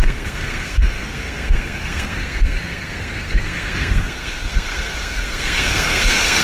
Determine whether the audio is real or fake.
fake